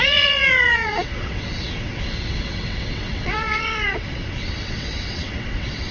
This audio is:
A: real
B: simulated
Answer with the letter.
B